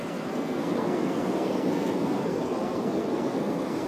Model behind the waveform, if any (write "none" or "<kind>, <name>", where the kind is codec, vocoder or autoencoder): codec, SNAC